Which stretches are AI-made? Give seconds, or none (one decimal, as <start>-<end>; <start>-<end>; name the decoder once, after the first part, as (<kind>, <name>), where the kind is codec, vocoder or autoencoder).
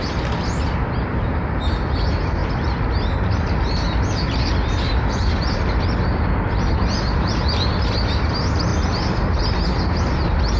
none